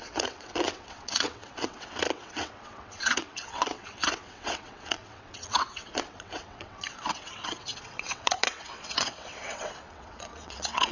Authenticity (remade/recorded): remade